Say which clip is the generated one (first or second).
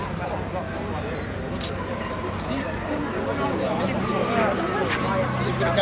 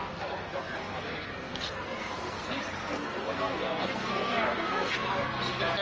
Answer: second